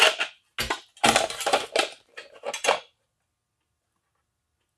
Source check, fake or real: real